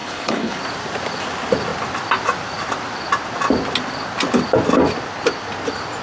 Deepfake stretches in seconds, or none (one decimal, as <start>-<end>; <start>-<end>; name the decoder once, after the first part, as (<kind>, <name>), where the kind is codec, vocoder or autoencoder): 0.0-0.6 (codec, HILCodec)